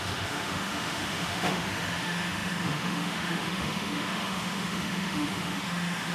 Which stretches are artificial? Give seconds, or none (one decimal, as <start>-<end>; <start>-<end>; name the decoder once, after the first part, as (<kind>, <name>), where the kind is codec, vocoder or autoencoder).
0.0-6.1 (autoencoder, DAC-VAE)